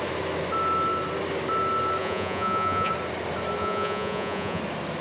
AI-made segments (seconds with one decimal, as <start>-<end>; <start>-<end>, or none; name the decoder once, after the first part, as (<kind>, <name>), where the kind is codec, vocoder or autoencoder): 2.0-2.9 (vocoder, Vocos); 3.6-4.6